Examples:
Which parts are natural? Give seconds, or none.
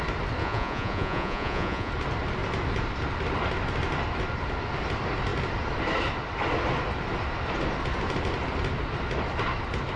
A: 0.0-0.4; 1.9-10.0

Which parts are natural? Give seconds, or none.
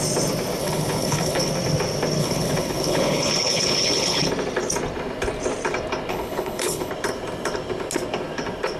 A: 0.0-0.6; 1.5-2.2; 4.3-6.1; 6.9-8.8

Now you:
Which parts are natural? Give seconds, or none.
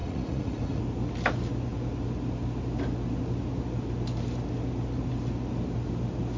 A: 0.8-6.4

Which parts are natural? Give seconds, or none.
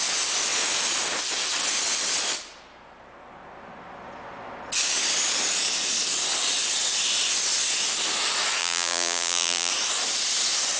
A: 0.0-8.6; 9.7-10.8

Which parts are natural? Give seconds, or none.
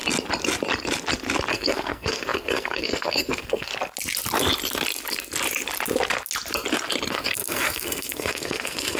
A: 0.0-1.5; 3.7-7.1